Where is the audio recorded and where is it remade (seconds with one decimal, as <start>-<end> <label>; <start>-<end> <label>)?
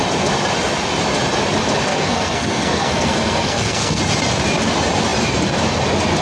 0.0-1.9 recorded; 1.9-4.0 remade; 4.0-6.2 recorded